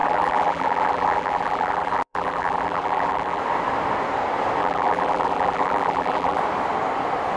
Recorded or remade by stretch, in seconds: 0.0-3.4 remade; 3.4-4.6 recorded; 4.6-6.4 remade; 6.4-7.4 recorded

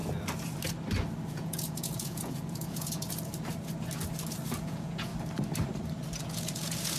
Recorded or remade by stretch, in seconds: 0.0-1.3 recorded; 1.3-3.3 remade; 3.3-4.6 recorded; 4.6-5.1 remade; 5.1-6.2 recorded; 6.2-7.0 remade

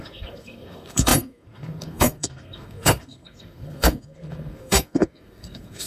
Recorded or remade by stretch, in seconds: 0.0-5.9 remade

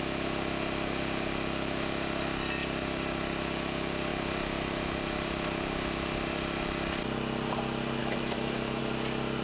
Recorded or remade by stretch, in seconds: 0.0-8.0 recorded; 8.0-8.8 remade; 8.8-9.4 recorded

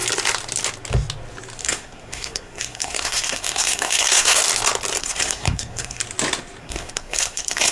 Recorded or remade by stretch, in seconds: 0.0-1.6 recorded; 1.6-4.4 remade; 4.4-5.0 recorded; 5.0-6.0 remade; 6.0-6.6 recorded; 6.6-7.7 remade

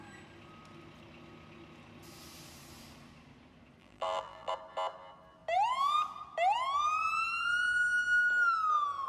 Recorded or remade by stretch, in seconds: 0.0-3.8 recorded; 3.8-4.5 remade; 4.5-9.1 recorded

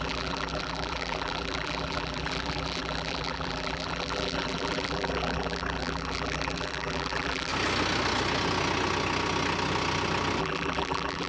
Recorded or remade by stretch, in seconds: 0.0-7.5 remade; 7.5-10.4 recorded; 10.4-11.3 remade

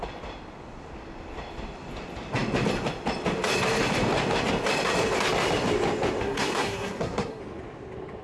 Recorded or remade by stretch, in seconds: 0.0-6.2 recorded; 6.2-7.4 remade; 7.4-8.2 recorded